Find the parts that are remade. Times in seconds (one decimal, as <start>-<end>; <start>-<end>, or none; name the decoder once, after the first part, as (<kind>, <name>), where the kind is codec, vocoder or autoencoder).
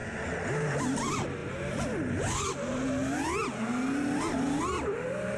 none